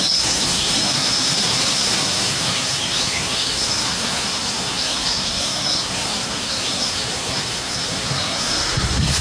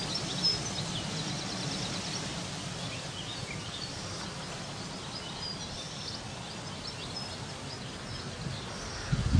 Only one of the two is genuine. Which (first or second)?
second